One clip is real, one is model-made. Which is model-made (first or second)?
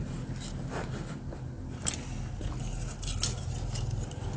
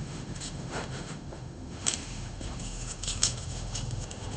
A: second